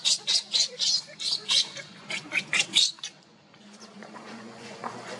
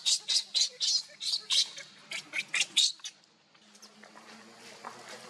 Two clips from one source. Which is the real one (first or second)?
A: second